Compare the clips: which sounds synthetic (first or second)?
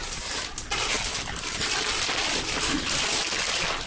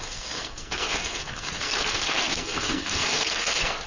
second